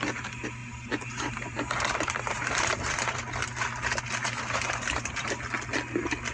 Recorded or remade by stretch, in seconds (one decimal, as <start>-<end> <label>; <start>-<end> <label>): 0.0-0.6 recorded; 0.6-3.2 remade; 3.2-4.2 recorded; 4.2-5.3 remade; 5.3-6.3 recorded